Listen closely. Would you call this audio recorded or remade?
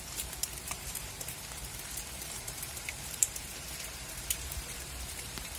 remade